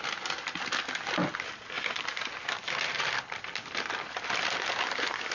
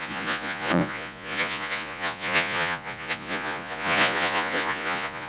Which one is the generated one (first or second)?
second